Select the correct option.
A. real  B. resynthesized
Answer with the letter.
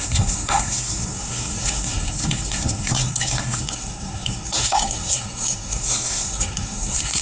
B